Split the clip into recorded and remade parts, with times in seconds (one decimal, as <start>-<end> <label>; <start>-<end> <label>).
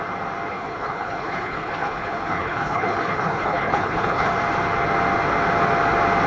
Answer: 0.0-0.5 recorded; 0.5-4.3 remade; 4.3-6.3 recorded